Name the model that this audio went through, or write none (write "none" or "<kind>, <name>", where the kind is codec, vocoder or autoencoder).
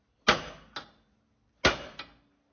none